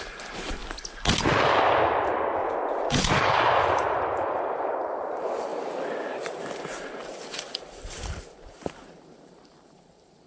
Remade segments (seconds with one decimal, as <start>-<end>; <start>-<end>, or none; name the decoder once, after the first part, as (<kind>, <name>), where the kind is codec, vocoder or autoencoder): 0.0-0.6 (vocoder, BigVGAN v2); 2.7-5.5; 6.2-10.3